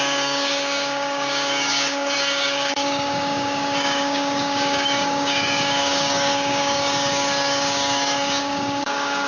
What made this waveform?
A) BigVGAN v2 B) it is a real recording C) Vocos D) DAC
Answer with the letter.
D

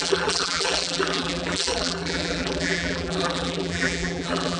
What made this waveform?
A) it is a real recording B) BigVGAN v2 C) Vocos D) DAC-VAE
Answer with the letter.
B